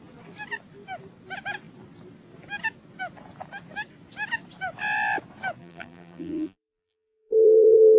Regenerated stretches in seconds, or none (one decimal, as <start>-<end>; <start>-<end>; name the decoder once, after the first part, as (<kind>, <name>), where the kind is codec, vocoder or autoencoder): 5.6-8.0 (vocoder, BigVGAN v2)